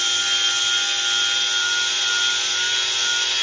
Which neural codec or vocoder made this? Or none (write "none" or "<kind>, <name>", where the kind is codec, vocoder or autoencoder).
none